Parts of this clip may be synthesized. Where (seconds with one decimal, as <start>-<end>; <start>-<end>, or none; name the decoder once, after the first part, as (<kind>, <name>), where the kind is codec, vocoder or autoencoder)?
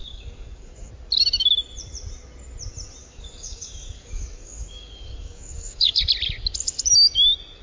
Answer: 0.0-0.9 (codec, DAC); 3.0-6.0